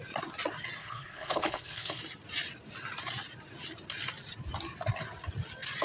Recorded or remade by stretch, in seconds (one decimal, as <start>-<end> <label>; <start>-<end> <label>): 0.0-0.8 recorded; 0.8-2.0 remade; 2.0-5.8 recorded